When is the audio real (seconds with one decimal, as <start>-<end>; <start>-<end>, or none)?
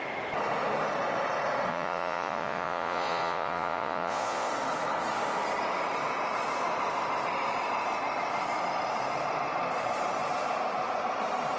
0.0-1.7; 4.5-11.6